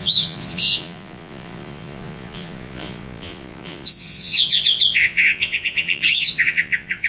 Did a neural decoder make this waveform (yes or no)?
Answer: yes